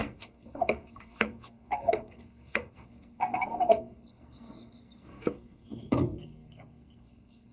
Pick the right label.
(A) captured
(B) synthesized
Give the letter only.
B